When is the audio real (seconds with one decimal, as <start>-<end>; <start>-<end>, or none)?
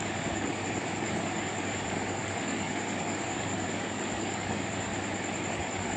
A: 4.9-5.5